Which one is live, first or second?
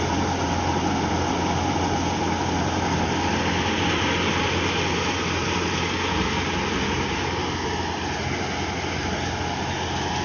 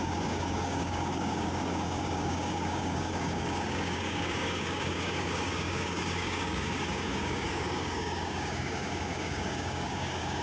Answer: first